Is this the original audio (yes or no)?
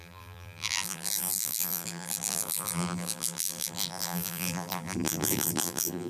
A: no